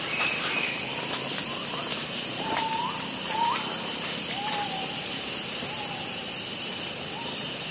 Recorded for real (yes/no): yes